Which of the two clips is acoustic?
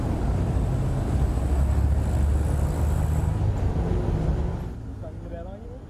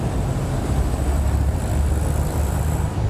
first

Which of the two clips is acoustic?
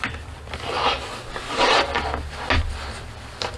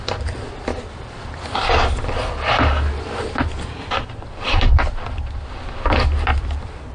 first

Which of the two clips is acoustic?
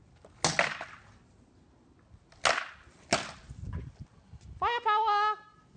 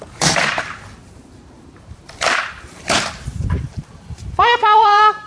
first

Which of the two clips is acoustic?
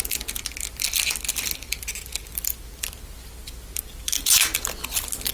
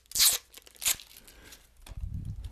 second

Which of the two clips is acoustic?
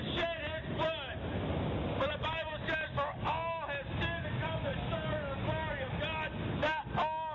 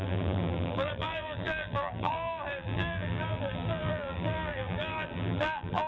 first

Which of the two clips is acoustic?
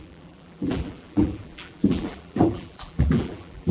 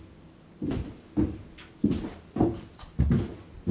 second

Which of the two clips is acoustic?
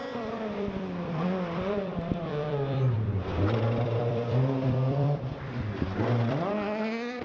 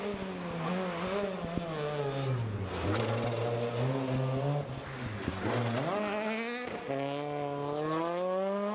second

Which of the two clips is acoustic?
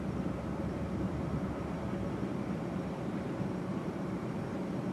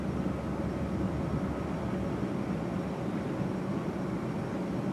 second